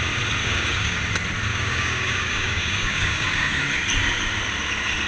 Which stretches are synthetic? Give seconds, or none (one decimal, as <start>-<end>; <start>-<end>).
0.4-1.0; 1.5-3.6